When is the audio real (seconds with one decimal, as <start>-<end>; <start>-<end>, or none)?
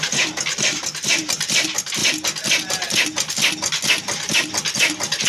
2.0-5.3